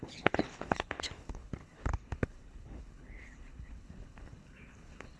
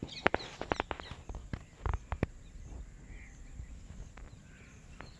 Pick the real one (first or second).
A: second